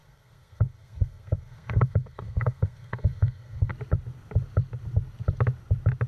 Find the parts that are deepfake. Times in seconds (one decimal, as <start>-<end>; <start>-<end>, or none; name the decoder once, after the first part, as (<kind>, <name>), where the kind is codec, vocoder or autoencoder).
0.0-3.7 (codec, SNAC)

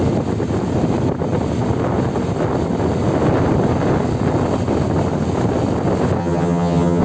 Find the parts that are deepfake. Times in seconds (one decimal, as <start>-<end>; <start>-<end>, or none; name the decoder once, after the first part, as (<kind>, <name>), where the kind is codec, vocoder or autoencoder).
6.2-7.0 (vocoder, HiFi-GAN)

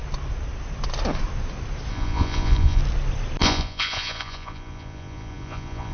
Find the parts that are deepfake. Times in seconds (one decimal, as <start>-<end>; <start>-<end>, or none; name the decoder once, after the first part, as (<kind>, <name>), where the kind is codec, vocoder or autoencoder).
1.9-2.8 (vocoder, Vocos); 3.4-5.9

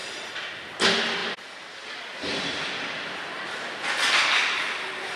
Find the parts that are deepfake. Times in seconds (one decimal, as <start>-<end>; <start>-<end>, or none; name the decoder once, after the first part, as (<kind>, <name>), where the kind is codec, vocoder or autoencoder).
none

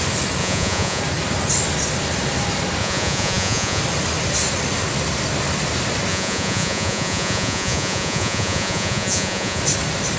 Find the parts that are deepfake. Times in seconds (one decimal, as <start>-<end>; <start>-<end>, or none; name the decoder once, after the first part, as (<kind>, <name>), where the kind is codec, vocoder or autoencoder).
0.4-1.0 (vocoder, Vocos); 2.8-3.8; 6.1-9.6